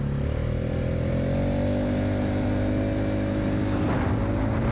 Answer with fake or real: real